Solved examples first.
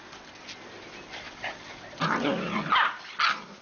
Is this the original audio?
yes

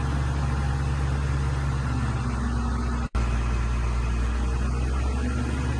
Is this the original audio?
yes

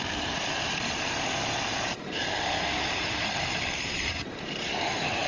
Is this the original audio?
no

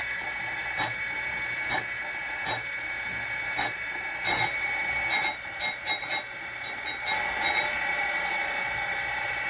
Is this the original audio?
yes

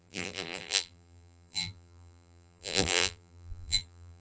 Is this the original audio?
no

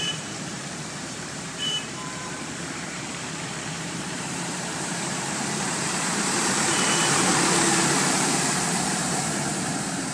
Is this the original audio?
no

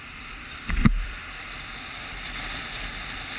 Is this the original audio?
no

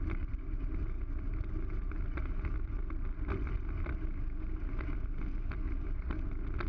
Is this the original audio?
yes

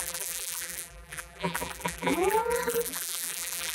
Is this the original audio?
no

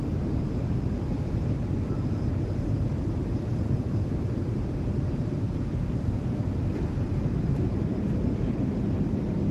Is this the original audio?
no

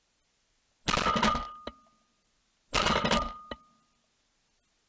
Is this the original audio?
yes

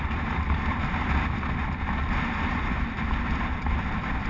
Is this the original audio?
yes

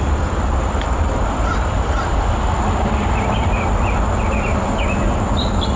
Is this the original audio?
no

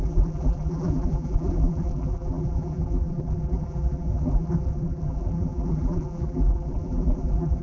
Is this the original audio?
no